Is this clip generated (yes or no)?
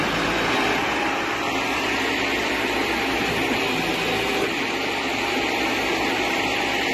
no